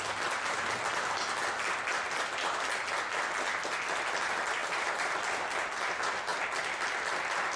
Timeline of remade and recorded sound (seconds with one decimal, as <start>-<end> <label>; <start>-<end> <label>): 0.0-7.6 recorded